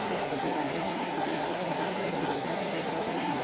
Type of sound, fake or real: fake